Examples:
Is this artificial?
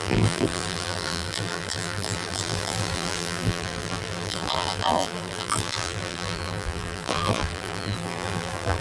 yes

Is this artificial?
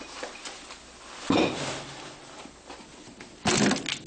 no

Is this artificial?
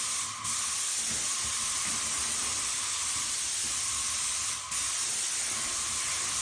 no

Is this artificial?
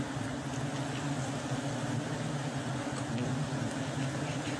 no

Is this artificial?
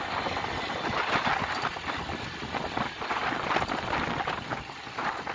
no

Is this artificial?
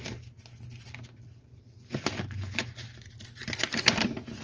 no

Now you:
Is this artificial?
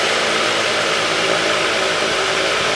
no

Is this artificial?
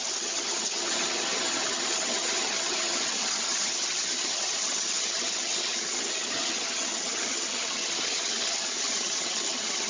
yes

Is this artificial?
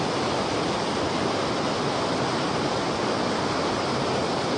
no